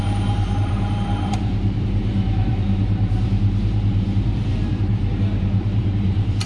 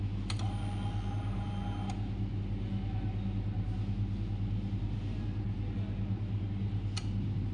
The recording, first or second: second